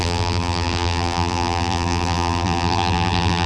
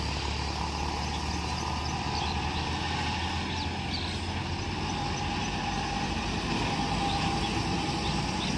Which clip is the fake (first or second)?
first